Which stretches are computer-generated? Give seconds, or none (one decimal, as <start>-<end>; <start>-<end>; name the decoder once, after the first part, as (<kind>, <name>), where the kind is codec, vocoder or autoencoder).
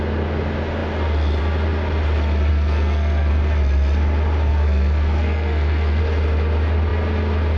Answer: 2.5-3.3 (codec, SNAC); 4.5-6.0